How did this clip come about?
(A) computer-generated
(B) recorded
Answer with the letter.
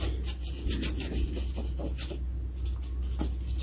B